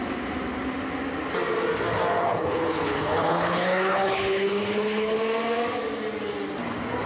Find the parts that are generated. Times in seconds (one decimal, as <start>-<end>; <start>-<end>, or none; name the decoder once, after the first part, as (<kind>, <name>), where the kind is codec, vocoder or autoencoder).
2.2-5.2 (codec, HILCodec)